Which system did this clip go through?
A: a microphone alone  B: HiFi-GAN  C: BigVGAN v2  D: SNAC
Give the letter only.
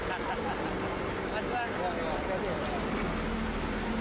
A